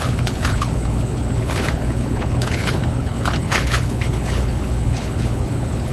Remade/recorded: remade